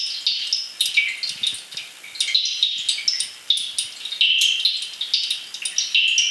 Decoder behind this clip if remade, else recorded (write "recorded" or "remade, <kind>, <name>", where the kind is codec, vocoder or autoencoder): recorded